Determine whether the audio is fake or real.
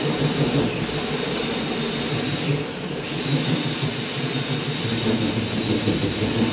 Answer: real